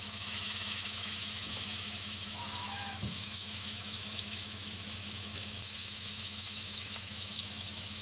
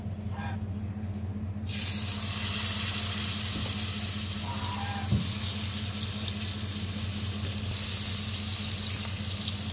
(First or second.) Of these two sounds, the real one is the second